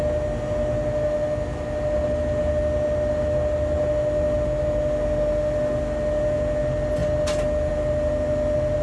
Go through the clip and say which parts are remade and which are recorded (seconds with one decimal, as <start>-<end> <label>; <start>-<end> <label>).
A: 0.0-8.8 recorded